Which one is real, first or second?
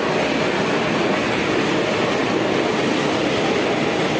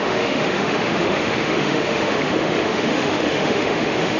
first